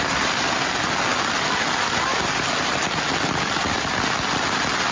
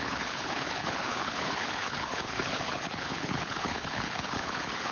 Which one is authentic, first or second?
first